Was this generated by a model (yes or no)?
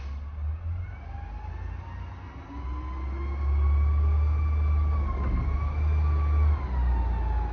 no